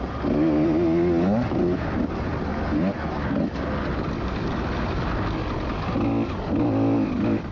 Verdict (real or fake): real